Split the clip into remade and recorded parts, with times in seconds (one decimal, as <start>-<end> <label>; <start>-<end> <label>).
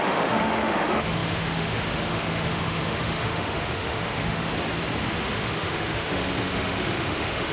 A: 0.0-4.5 remade; 4.5-5.1 recorded; 5.1-7.5 remade